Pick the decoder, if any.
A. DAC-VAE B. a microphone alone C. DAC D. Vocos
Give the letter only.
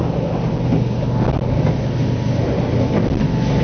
B